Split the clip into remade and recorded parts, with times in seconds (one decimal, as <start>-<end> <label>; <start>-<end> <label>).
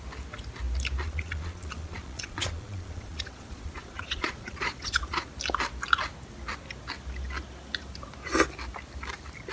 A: 0.0-1.0 recorded; 1.0-5.3 remade; 5.3-9.5 recorded